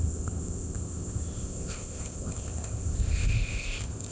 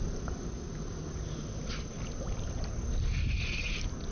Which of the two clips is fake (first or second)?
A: first